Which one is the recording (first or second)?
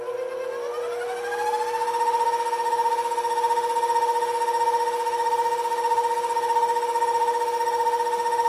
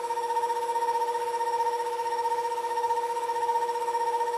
first